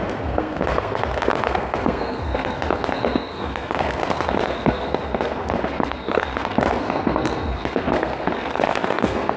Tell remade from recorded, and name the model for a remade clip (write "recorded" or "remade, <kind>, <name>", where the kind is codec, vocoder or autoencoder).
remade, codec, SNAC